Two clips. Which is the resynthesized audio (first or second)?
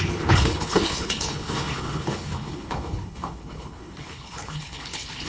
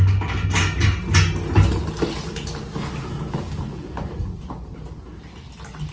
first